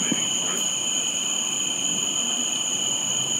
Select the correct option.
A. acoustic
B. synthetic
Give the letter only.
A